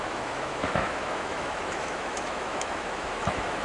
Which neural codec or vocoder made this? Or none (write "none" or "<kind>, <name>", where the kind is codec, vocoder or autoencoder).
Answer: autoencoder, DAC-VAE